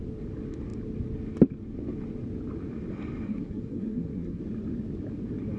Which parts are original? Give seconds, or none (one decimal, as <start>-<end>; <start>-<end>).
0.0-3.3; 4.4-5.6